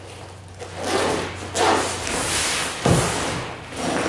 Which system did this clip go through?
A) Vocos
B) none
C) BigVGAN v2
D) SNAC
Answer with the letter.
B